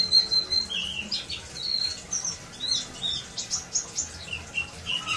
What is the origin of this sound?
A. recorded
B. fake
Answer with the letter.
A